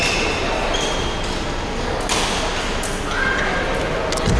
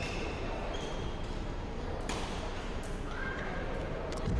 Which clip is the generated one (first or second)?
second